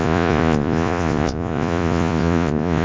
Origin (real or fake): fake